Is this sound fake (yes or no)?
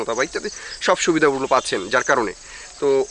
no